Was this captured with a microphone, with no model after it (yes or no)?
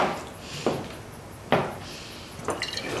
yes